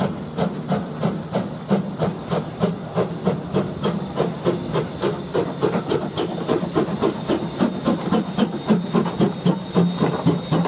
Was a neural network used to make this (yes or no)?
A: no